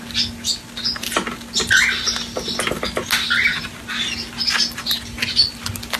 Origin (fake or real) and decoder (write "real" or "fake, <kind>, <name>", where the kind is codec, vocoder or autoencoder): real